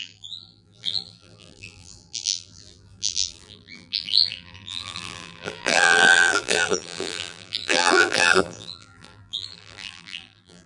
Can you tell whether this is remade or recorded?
remade